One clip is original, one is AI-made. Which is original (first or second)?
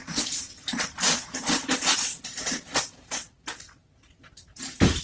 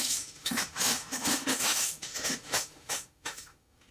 first